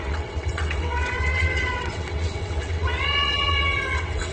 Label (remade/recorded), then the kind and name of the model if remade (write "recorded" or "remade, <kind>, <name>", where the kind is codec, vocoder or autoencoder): remade, vocoder, WaveNeXt